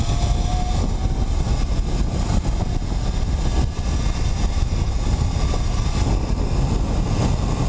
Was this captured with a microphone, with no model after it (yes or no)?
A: yes